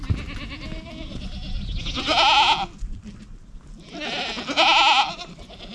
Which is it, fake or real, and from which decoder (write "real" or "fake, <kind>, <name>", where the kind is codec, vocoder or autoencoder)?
real